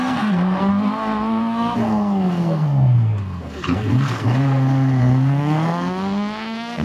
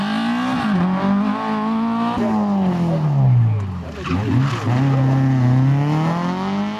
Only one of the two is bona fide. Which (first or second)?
second